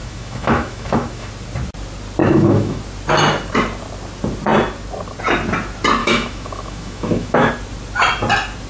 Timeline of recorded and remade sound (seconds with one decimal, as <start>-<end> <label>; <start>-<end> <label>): 0.0-1.3 remade; 1.3-2.2 recorded; 2.2-2.8 remade; 2.8-6.0 recorded; 6.0-7.5 remade; 7.5-8.7 recorded